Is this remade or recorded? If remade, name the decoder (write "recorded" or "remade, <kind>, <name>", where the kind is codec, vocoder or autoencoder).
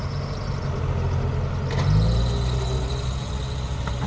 recorded